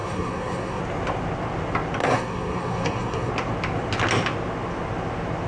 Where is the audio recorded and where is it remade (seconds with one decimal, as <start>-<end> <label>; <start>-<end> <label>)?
0.0-0.8 remade; 0.8-2.0 recorded; 2.0-3.3 remade; 3.3-5.5 recorded